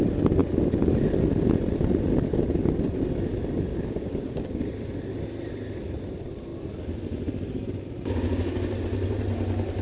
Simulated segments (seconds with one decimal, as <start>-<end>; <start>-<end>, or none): 3.7-4.6